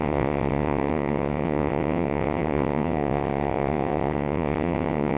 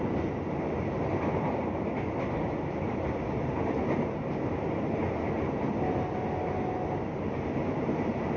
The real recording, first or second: second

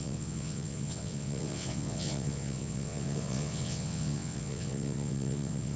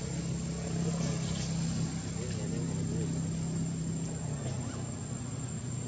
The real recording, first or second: second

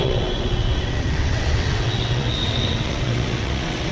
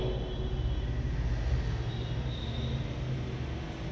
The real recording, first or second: second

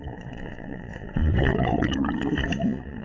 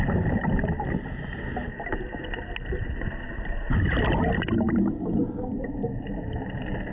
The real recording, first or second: second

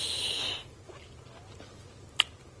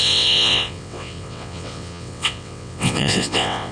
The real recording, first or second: first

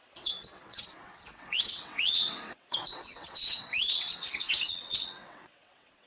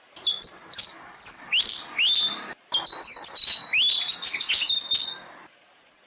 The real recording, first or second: second